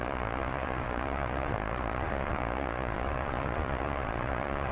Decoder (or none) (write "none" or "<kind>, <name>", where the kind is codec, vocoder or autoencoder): vocoder, Vocos